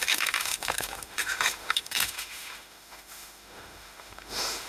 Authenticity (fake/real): fake